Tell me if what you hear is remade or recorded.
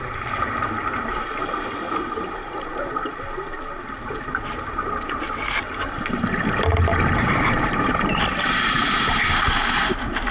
recorded